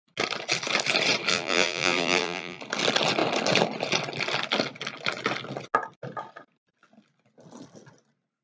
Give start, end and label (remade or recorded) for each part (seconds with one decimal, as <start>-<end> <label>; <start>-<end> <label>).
0.0-1.3 recorded; 1.3-2.6 remade; 2.6-8.4 recorded